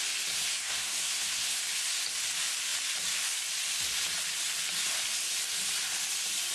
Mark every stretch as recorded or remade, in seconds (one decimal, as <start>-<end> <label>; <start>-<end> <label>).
0.0-0.4 recorded; 0.4-1.6 remade; 1.6-6.5 recorded